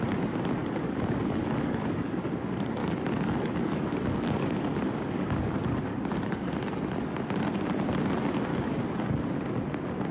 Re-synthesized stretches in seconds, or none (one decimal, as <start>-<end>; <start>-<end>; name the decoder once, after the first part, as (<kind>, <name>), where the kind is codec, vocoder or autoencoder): 0.6-2.3 (codec, DAC); 2.8-5.5; 5.9-6.5; 8.5-9.2